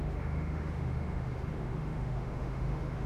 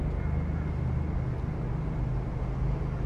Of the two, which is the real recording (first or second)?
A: second